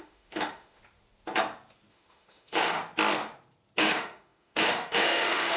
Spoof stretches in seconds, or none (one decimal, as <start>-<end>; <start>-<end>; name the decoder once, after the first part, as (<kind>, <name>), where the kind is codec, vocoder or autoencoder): 0.0-0.8 (autoencoder, DAC-VAE); 1.9-2.8; 3.8-5.6